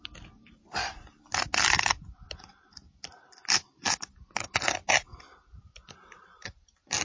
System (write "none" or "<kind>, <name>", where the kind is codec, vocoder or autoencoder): vocoder, BigVGAN v2